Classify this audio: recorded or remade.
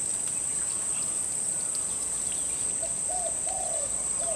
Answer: remade